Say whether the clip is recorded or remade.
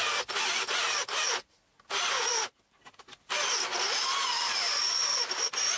recorded